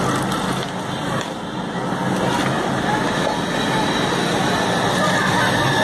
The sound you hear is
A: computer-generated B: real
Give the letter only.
B